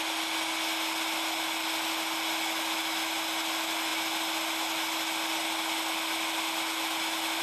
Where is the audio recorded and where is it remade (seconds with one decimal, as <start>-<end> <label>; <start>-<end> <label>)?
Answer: 0.0-7.4 recorded

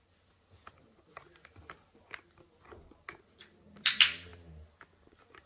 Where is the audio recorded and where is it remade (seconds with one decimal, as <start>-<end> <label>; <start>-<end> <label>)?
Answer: 0.0-5.5 recorded